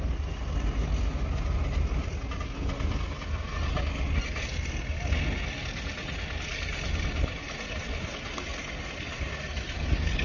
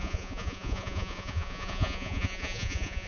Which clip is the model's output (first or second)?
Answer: second